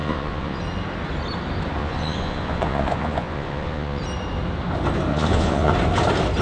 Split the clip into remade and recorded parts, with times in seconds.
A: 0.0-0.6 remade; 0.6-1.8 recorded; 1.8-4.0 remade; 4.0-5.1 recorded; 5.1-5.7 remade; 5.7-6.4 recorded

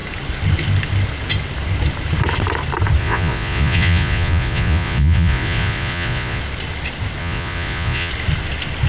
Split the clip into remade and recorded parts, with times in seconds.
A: 0.0-3.0 recorded; 3.0-6.4 remade; 6.4-7.2 recorded; 7.2-8.1 remade; 8.1-8.9 recorded

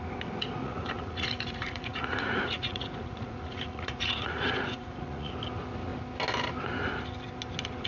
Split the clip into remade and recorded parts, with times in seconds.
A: 0.0-0.6 recorded; 0.6-5.3 remade; 5.3-7.9 recorded

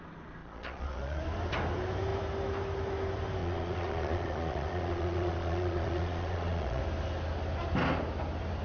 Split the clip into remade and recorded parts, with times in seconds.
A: 0.0-0.4 recorded; 0.4-1.2 remade; 1.2-3.4 recorded; 3.4-6.8 remade; 6.8-8.6 recorded

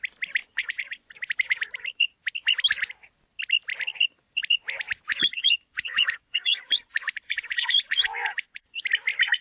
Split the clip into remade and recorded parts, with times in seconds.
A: 0.0-0.4 recorded; 0.4-1.1 remade; 1.1-5.1 recorded; 5.1-8.8 remade; 8.8-9.4 recorded

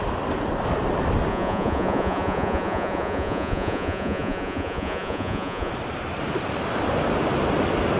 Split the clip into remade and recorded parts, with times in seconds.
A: 0.0-1.3 recorded; 1.3-5.7 remade; 5.7-8.0 recorded